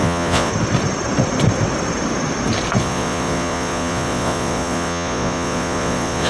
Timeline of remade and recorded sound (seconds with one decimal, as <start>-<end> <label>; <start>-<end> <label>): 0.0-0.5 remade; 0.5-2.8 recorded; 2.8-6.3 remade